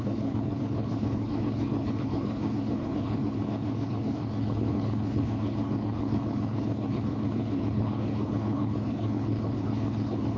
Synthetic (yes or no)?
yes